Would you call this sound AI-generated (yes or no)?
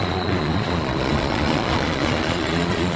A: yes